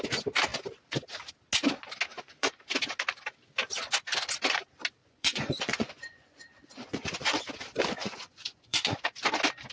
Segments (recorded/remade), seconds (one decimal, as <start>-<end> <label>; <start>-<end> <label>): 0.0-2.1 recorded; 2.1-2.6 remade; 2.6-5.0 recorded; 5.0-7.4 remade; 7.4-8.0 recorded; 8.0-9.0 remade; 9.0-9.7 recorded